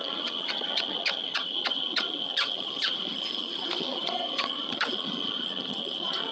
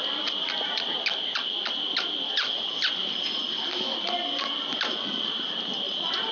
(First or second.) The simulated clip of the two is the first